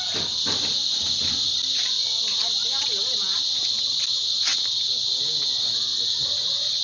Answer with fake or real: real